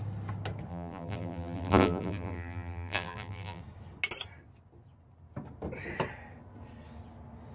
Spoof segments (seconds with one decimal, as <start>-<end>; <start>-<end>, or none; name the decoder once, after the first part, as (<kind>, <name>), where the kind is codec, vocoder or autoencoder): 0.7-3.6 (vocoder, BigVGAN v2)